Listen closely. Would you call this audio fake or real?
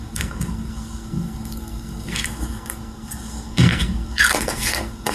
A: fake